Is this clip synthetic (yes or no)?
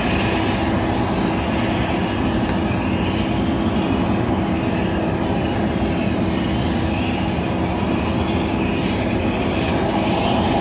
no